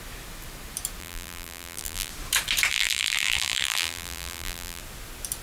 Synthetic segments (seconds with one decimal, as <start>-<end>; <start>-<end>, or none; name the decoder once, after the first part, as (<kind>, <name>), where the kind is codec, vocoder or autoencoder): 1.0-2.1 (vocoder, BigVGAN v2); 2.7-4.8